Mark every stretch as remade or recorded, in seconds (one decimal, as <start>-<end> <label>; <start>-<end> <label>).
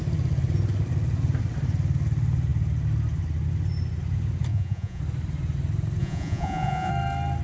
0.0-4.5 recorded; 4.5-5.0 remade; 5.0-6.0 recorded; 6.0-6.9 remade; 6.9-7.4 recorded